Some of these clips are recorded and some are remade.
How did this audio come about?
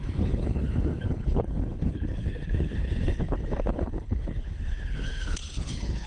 remade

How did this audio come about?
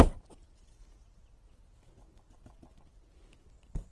recorded